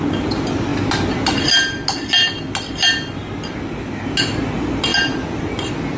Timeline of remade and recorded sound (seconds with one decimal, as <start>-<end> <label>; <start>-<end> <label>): 0.0-6.0 recorded